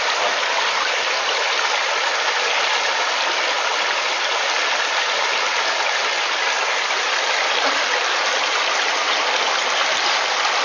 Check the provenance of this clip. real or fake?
real